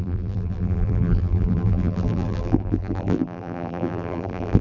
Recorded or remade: remade